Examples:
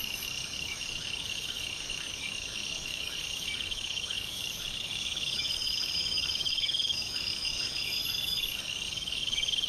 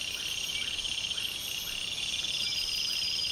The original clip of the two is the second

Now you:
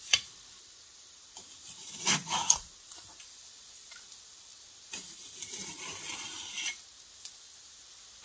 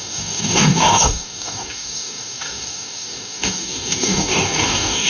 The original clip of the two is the first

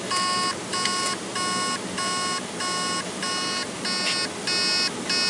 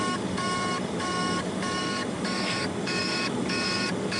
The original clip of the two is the first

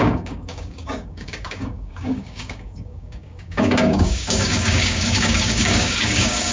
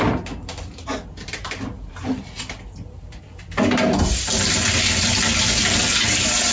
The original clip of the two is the second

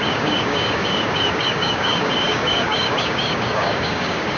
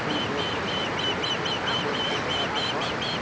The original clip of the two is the second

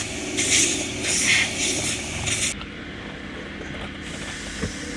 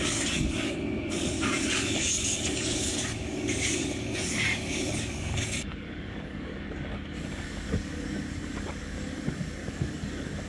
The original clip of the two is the first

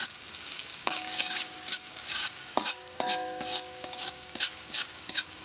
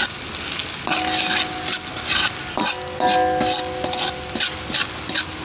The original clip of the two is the second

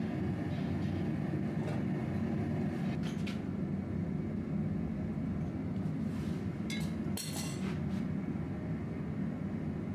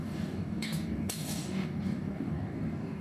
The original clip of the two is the first